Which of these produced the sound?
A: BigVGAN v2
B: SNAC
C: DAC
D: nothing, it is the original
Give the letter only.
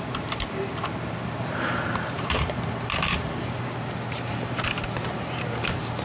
A